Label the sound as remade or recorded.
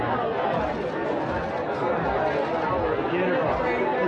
recorded